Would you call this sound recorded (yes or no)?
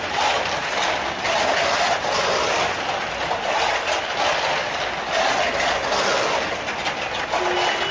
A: yes